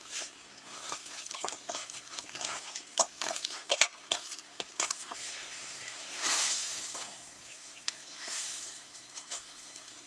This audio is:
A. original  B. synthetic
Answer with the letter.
B